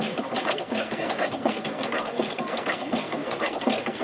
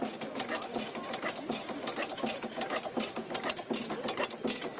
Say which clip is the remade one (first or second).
first